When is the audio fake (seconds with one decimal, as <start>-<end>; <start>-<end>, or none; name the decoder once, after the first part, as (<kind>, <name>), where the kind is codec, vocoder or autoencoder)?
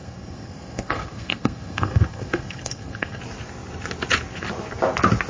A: 0.0-3.2 (codec, SNAC)